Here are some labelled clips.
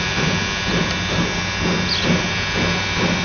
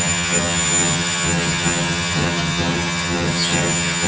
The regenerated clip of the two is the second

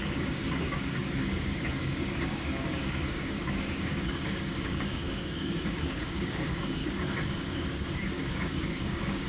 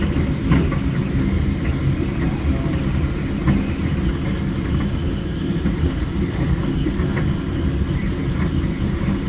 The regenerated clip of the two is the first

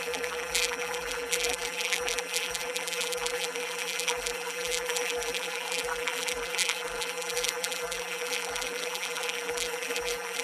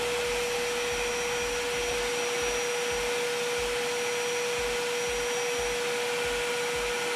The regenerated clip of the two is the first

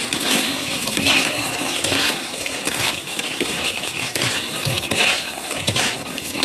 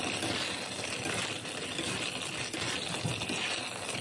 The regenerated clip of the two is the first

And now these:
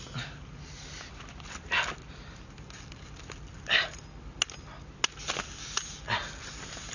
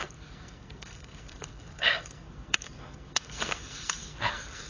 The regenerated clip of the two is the second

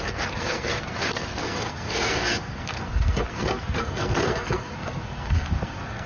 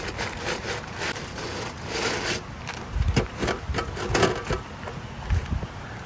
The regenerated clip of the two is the first